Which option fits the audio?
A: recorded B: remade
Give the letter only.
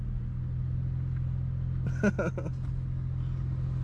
A